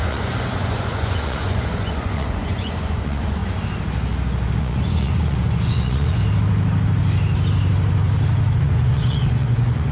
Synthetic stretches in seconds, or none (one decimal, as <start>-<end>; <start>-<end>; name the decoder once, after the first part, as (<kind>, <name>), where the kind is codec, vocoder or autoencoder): 0.0-3.4 (vocoder, Vocos); 4.6-6.2; 8.6-9.9